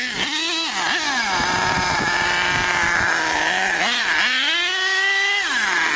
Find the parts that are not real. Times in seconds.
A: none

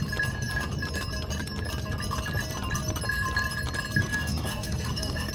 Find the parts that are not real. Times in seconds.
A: 4.0-5.3 (codec, SNAC)

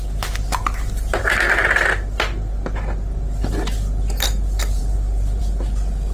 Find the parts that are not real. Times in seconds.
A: none

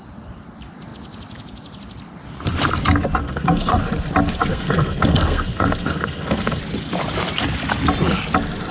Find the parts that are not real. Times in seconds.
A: 3.2-3.8 (codec, SNAC); 4.5-6.6

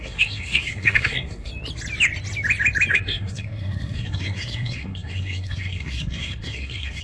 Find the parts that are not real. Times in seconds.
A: 0.0-1.5 (codec, SNAC); 2.9-7.0